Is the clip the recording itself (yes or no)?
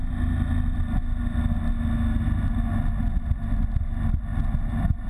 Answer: yes